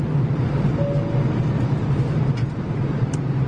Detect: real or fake real